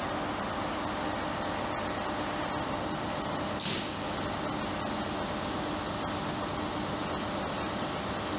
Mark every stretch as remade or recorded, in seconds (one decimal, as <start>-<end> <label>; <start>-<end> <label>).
0.0-8.4 recorded